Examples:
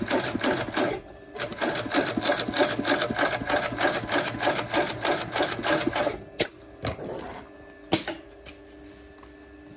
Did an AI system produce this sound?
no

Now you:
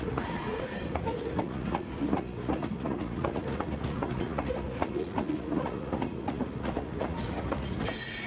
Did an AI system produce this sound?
yes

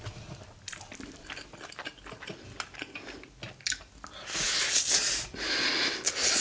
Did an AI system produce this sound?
no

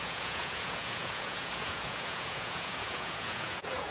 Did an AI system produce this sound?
yes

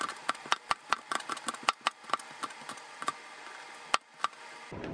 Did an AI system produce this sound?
no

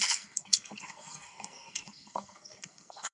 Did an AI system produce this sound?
yes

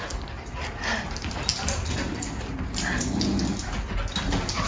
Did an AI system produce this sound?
no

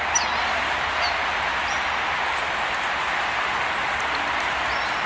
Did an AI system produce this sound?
no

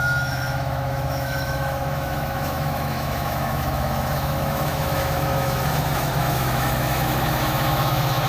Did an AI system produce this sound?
yes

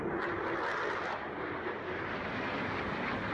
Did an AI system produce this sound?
no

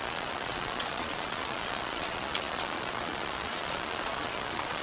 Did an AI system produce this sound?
yes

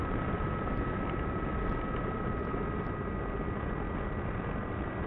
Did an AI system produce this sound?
no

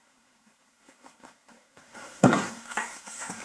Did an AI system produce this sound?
yes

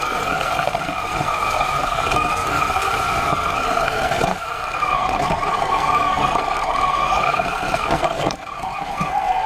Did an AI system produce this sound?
yes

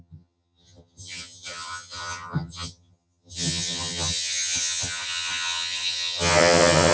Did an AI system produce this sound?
yes